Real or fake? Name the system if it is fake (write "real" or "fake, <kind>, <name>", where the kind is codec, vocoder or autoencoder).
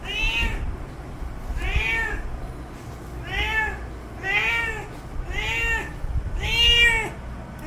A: real